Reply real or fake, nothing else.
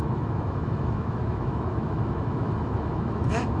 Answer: fake